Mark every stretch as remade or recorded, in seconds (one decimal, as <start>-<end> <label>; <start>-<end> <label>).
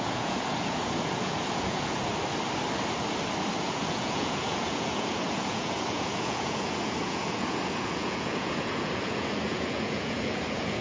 0.0-2.1 remade; 2.1-3.6 recorded; 3.6-10.8 remade